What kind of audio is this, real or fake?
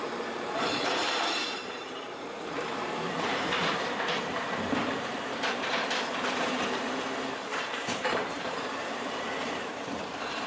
fake